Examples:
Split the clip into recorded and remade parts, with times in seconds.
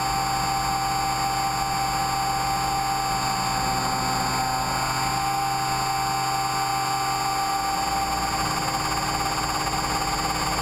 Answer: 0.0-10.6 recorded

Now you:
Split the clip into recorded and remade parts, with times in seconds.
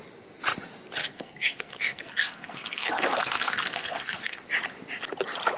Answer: 0.0-1.0 recorded; 1.0-4.4 remade; 4.4-5.6 recorded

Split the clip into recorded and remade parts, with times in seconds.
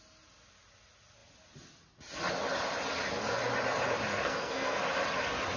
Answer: 0.0-4.1 recorded; 4.1-4.8 remade; 4.8-5.6 recorded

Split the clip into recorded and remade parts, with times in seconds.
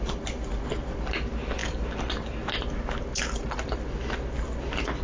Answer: 0.0-5.0 recorded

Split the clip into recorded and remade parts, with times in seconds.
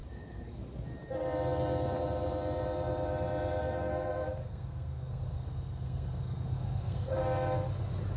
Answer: 0.0-0.6 remade; 0.6-3.6 recorded; 3.6-7.2 remade; 7.2-8.2 recorded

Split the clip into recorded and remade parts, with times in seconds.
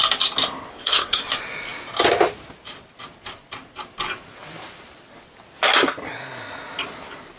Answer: 0.0-0.7 recorded; 0.7-1.2 remade; 1.2-7.4 recorded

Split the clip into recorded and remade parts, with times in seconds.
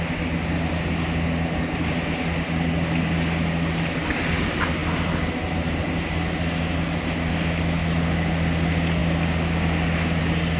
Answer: 0.0-10.6 recorded